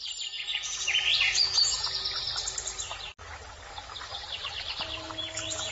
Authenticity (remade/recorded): recorded